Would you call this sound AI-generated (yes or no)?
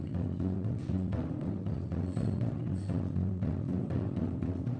yes